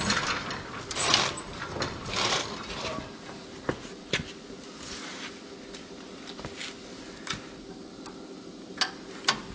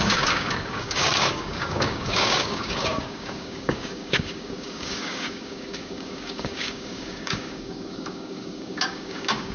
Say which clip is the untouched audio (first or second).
first